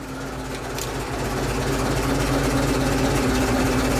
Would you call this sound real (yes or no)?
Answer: yes